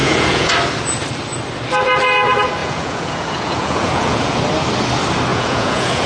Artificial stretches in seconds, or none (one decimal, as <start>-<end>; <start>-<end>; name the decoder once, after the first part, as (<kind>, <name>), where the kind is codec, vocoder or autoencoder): 0.0-0.5 (vocoder, Vocos); 2.6-4.4; 5.3-6.1